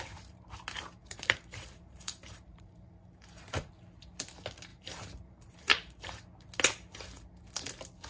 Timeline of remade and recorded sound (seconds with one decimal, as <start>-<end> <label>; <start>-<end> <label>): 0.0-1.0 recorded; 1.0-3.7 remade; 3.7-4.7 recorded; 4.7-6.2 remade; 6.2-8.1 recorded